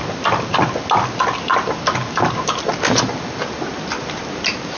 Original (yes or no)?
yes